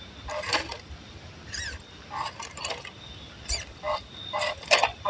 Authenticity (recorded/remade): recorded